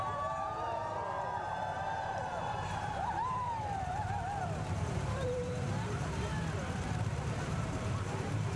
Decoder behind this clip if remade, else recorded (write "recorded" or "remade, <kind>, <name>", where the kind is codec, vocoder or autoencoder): remade, vocoder, BigVGAN v2